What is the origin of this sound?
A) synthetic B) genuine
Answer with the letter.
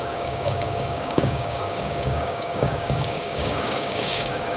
A